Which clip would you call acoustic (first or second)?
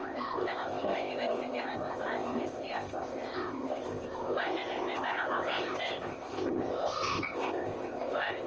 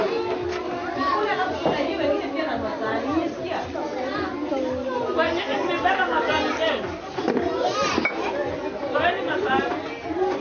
second